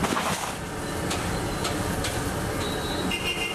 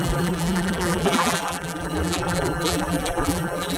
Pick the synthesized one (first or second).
second